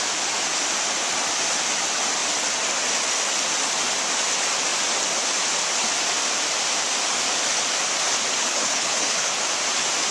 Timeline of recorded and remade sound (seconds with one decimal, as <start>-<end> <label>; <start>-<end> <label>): 0.0-8.4 recorded; 8.4-9.3 remade; 9.3-10.1 recorded